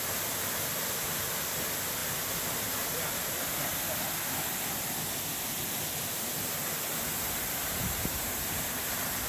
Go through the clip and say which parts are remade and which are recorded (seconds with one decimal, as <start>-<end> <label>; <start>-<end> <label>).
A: 0.0-7.6 recorded; 7.6-8.6 remade; 8.6-9.3 recorded